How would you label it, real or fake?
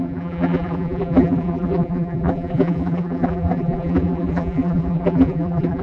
fake